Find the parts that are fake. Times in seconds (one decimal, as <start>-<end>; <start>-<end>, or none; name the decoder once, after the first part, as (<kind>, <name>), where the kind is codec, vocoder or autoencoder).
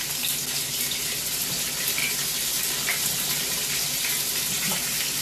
none